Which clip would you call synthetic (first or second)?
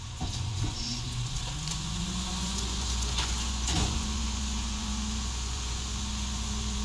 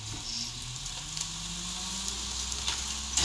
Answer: first